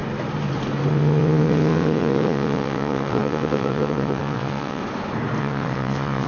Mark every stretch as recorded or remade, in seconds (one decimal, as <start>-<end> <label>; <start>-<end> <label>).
0.0-0.9 recorded; 0.9-4.8 remade; 4.8-5.4 recorded; 5.4-6.3 remade